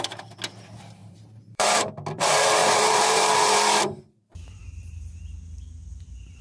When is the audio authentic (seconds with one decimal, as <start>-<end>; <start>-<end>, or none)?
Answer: 0.0-1.0; 1.9-2.6; 4.0-6.4